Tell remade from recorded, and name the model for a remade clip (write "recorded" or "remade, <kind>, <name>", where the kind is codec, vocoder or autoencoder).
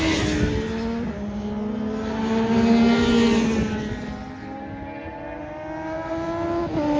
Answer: recorded